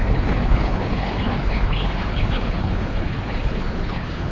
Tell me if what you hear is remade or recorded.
remade